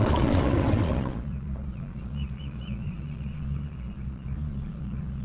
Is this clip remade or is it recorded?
remade